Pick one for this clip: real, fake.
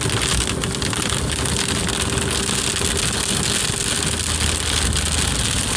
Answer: real